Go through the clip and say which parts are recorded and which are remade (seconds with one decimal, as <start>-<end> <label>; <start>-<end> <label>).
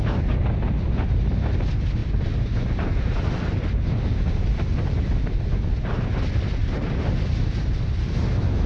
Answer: 0.0-2.0 recorded; 2.0-5.4 remade; 5.4-6.6 recorded; 6.6-8.7 remade